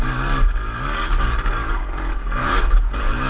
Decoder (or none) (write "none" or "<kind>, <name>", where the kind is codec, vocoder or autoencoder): codec, DAC